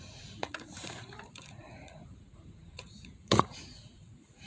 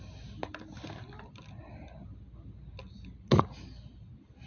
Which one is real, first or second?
second